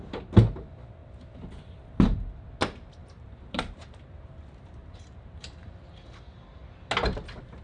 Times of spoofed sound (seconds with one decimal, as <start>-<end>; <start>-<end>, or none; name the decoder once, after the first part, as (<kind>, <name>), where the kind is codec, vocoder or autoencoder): 3.0-5.9 (vocoder, BigVGAN v2)